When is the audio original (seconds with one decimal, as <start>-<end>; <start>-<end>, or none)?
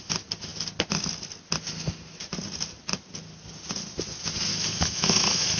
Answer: 0.0-4.5